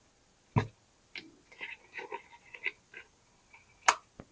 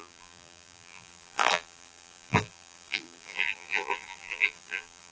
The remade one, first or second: second